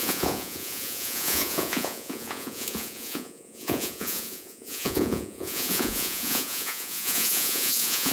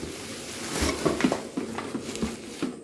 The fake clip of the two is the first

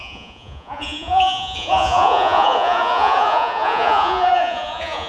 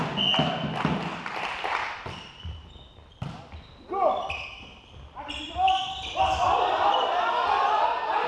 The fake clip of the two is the first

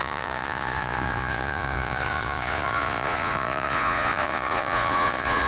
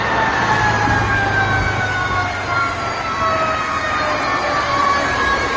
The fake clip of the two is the first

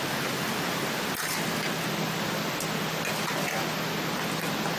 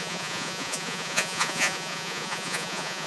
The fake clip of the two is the second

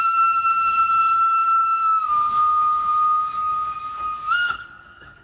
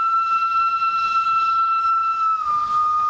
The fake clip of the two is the first